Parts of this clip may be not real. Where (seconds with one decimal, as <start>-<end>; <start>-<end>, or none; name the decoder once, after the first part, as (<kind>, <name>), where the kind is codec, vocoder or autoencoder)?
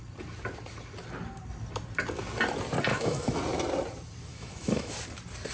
2.9-3.4 (autoencoder, DAC-VAE); 4.3-4.9